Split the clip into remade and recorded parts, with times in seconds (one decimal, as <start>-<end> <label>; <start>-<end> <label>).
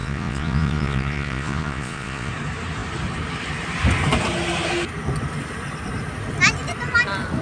0.0-2.3 remade; 2.3-7.4 recorded